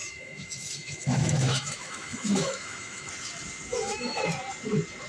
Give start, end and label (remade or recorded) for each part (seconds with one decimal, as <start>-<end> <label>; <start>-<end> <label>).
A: 0.0-3.1 remade; 3.1-3.7 recorded; 3.7-4.2 remade; 4.2-5.1 recorded